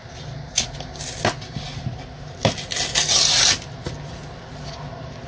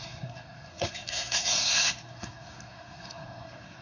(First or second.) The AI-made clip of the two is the second